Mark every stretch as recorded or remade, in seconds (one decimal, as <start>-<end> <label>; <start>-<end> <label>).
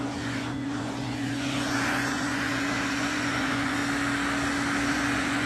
0.0-3.8 remade; 3.8-4.9 recorded; 4.9-5.5 remade